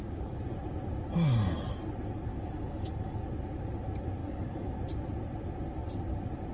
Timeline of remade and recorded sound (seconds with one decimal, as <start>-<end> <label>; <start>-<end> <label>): 0.0-2.3 recorded; 2.3-3.2 remade; 3.2-4.2 recorded; 4.2-4.7 remade; 4.7-6.5 recorded